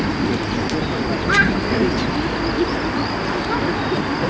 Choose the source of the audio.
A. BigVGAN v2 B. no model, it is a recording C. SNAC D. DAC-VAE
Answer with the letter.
B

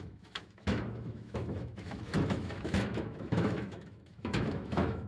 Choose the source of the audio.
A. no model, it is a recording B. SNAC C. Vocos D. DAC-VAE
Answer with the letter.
D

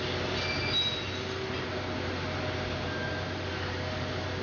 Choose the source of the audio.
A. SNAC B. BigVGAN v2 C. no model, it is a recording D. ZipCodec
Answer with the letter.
C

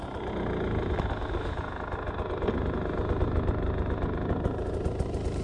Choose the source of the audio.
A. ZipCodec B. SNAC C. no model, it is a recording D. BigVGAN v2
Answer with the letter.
C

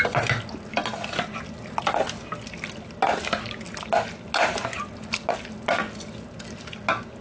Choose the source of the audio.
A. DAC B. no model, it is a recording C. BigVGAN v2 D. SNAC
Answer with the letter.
B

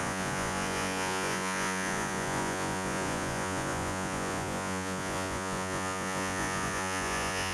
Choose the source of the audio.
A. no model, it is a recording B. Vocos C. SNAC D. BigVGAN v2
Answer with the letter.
B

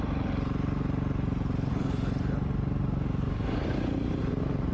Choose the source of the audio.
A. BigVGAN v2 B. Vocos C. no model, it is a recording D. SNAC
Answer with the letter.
C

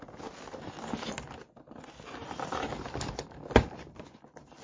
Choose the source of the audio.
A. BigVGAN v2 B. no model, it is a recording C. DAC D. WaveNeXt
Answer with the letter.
B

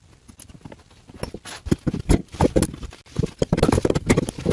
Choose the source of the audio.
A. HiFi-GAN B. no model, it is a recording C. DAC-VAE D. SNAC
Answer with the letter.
B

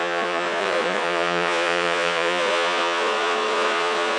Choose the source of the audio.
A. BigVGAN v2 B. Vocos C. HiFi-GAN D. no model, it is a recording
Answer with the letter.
B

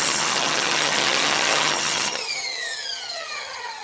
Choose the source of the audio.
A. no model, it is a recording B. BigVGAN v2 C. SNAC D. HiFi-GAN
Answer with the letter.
D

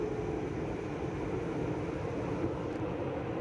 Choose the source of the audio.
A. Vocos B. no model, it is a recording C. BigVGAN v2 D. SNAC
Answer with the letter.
B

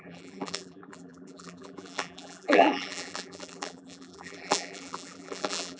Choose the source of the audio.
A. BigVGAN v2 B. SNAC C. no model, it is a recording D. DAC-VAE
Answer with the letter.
A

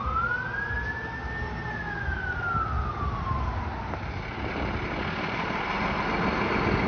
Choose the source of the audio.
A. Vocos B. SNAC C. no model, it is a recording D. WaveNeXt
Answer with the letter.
C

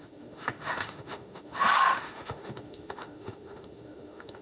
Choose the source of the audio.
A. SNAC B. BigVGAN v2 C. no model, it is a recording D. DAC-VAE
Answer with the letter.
D